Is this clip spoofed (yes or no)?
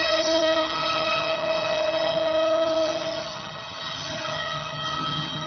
yes